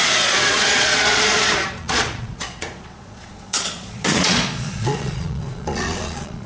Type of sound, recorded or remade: remade